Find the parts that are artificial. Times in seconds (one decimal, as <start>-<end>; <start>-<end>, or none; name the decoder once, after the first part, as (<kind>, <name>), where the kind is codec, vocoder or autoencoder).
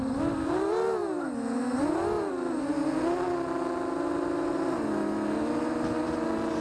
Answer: none